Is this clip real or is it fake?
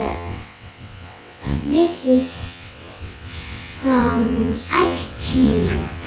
fake